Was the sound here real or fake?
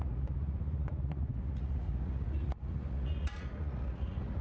fake